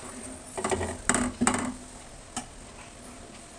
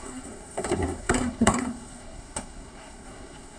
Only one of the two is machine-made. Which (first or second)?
second